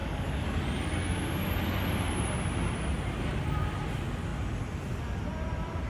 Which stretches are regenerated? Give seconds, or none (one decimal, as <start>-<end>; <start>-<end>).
0.0-0.6